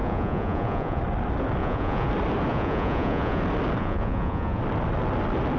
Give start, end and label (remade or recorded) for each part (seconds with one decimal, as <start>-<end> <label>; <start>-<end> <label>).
0.0-1.0 remade; 1.0-1.6 recorded; 1.6-2.1 remade; 2.1-2.5 recorded; 2.5-3.4 remade; 3.4-3.8 recorded; 3.8-4.6 remade; 4.6-5.6 recorded